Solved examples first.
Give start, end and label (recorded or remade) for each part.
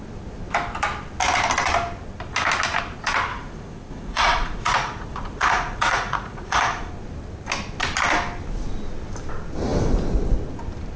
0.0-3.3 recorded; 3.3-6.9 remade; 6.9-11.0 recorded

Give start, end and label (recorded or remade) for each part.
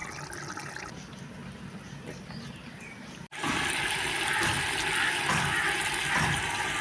0.0-6.8 recorded